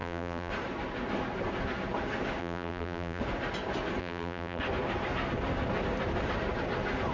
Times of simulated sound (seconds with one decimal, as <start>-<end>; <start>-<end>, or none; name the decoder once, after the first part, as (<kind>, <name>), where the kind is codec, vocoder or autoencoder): 0.0-0.5 (vocoder, BigVGAN v2); 2.4-3.2; 4.0-4.6